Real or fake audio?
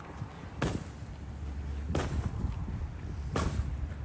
real